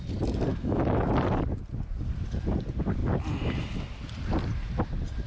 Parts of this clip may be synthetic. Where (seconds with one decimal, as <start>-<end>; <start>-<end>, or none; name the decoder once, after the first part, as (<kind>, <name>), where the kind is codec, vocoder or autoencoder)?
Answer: 0.5-1.1 (autoencoder, DAC-VAE)